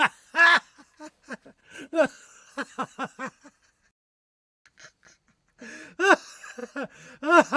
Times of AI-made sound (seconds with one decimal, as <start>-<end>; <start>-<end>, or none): 1.6-2.5